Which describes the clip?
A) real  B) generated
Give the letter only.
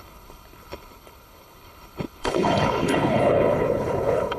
B